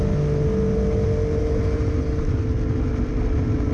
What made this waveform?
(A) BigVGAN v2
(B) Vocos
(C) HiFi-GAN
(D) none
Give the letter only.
D